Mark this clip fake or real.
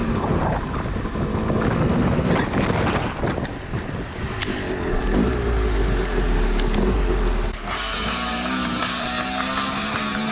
real